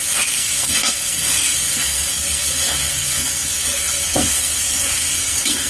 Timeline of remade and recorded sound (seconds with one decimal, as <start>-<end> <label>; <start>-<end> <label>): 0.0-5.7 remade